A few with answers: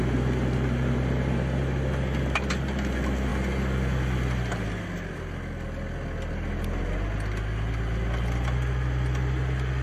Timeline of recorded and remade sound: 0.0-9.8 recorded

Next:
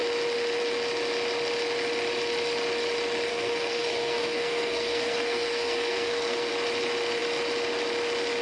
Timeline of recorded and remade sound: 0.0-3.3 recorded; 3.3-6.5 remade; 6.5-8.4 recorded

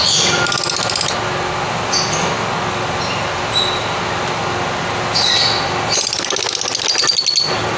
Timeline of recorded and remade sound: 0.0-7.8 recorded

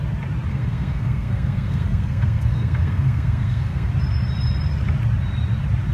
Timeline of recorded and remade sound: 0.0-0.5 recorded; 0.5-3.9 remade; 3.9-5.9 recorded

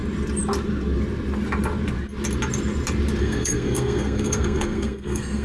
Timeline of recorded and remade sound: 0.0-3.2 recorded; 3.2-5.4 remade

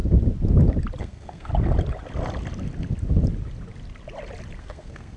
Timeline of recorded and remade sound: 0.0-1.0 recorded; 1.0-1.5 remade; 1.5-4.6 recorded; 4.6-5.2 remade

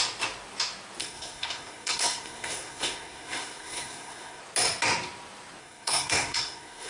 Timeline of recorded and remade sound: 0.0-1.0 recorded; 1.0-4.4 remade; 4.4-5.6 recorded; 5.6-6.9 remade